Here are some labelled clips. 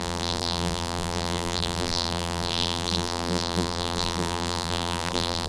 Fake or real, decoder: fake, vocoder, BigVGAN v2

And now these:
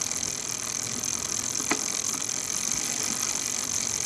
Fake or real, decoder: real